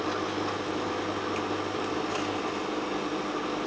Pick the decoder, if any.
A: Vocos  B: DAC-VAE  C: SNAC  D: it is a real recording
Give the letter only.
D